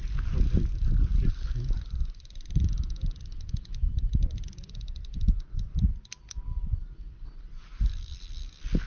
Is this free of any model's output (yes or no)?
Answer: no